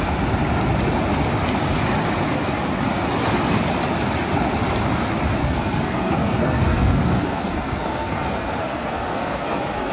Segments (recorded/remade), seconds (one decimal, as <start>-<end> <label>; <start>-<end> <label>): 0.0-5.4 recorded; 5.4-9.9 remade

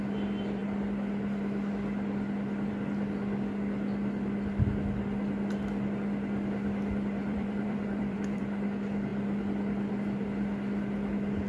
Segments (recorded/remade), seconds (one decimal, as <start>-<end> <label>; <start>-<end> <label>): 0.0-7.2 recorded; 7.2-8.4 remade; 8.4-11.5 recorded

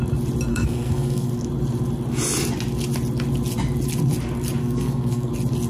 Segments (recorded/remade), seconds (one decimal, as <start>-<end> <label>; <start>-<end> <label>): 0.0-0.5 recorded; 0.5-1.3 remade; 1.3-4.6 recorded; 4.6-5.3 remade; 5.3-5.7 recorded

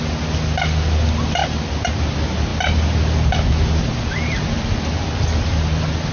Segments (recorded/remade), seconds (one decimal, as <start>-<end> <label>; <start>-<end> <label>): 0.0-6.1 recorded

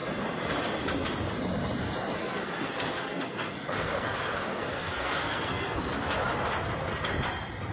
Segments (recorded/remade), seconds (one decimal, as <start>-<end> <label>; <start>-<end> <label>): 0.0-2.2 recorded; 2.2-5.8 remade; 5.8-7.7 recorded

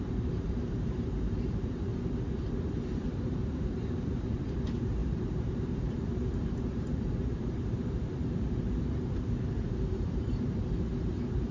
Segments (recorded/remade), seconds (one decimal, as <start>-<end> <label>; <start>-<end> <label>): 0.0-1.9 remade; 1.9-2.5 recorded; 2.5-11.5 remade

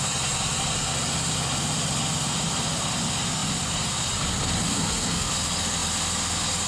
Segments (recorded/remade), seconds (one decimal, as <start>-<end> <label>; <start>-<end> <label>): 0.0-4.7 recorded; 4.7-5.3 remade; 5.3-6.7 recorded

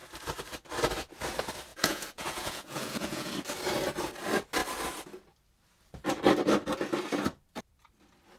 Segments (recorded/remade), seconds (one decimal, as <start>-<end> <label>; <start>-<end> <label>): 0.0-1.7 recorded; 1.7-3.3 remade; 3.3-8.4 recorded